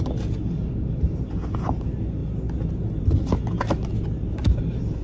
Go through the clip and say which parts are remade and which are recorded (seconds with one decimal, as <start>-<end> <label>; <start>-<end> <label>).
0.0-5.0 recorded